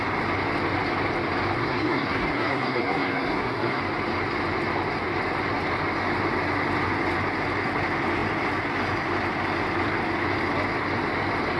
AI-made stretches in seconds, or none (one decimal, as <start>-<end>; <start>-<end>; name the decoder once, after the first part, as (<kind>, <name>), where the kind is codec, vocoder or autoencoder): 1.6-3.8 (codec, SNAC)

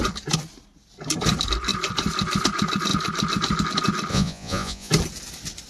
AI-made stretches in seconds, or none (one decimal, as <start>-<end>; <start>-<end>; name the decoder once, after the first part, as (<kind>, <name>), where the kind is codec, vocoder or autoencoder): 4.1-4.9 (vocoder, Vocos)